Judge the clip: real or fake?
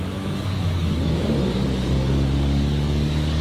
fake